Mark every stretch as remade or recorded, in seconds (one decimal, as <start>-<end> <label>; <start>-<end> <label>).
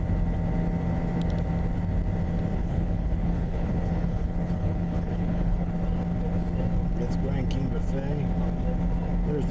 0.0-2.6 recorded; 2.6-5.7 remade; 5.7-9.5 recorded